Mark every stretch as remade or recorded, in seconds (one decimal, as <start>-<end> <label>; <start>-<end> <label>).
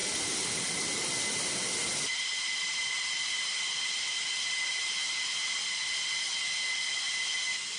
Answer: 0.0-7.8 recorded